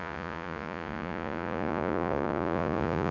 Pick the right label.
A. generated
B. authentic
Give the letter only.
A